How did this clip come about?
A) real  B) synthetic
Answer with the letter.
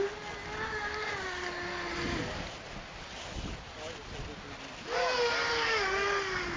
A